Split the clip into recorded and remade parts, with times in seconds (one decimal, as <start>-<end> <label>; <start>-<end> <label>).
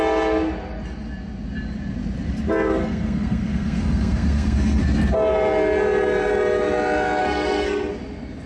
0.0-2.8 recorded; 2.8-4.8 remade; 4.8-7.2 recorded; 7.2-7.9 remade; 7.9-8.5 recorded